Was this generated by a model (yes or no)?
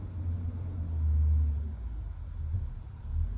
no